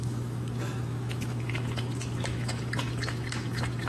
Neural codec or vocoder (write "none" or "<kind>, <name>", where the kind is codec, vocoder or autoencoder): autoencoder, DAC-VAE